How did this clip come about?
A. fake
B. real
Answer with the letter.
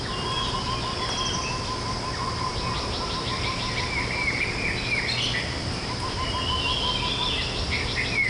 B